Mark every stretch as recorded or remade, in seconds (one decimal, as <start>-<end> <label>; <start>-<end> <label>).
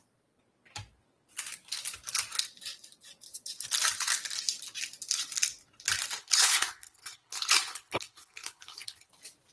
0.0-6.2 recorded; 6.2-9.1 remade; 9.1-9.5 recorded